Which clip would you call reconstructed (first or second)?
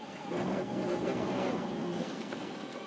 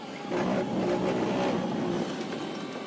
first